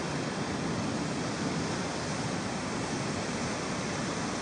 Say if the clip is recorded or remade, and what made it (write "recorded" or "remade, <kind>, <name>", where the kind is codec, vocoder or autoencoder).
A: recorded